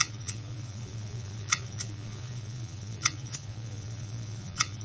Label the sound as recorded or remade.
remade